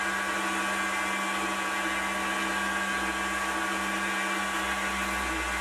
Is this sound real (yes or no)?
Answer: yes